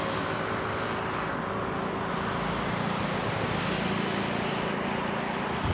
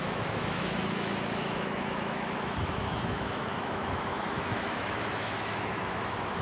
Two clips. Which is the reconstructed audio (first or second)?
second